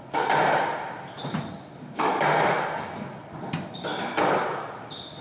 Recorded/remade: recorded